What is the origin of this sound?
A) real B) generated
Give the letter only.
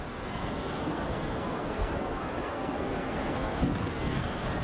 B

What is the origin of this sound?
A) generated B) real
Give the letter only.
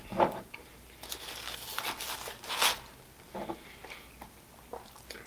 B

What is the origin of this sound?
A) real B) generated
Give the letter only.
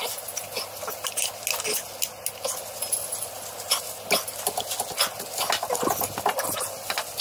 A